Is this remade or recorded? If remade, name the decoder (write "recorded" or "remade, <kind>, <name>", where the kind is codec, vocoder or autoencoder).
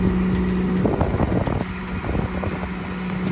recorded